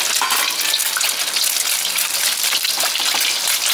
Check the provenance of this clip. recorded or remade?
recorded